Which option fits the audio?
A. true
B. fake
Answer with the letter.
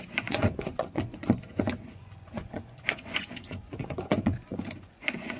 B